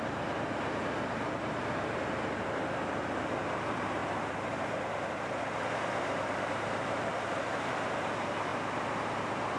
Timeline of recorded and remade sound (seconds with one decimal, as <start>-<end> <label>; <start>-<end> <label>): 0.0-2.6 remade; 2.6-3.4 recorded; 3.4-9.6 remade